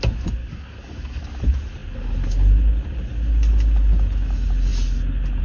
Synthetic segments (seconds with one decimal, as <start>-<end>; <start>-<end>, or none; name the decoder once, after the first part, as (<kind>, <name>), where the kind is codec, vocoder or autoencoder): 0.4-1.2 (codec, DAC)